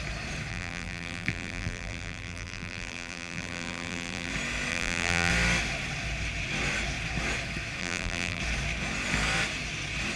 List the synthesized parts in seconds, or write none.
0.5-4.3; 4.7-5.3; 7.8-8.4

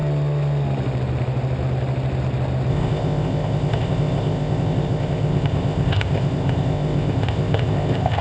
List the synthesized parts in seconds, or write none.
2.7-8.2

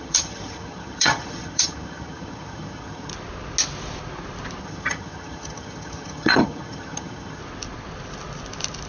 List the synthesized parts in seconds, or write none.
0.0-3.1; 4.6-7.4

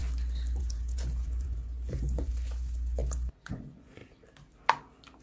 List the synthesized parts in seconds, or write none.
0.6-4.0

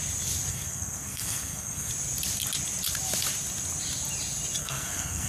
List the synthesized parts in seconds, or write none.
0.5-1.9; 4.6-5.3

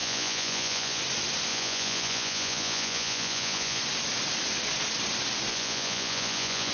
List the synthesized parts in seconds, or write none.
0.0-1.0; 1.5-3.8; 5.5-6.7

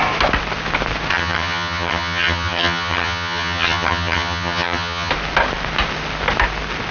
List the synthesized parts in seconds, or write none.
1.1-5.1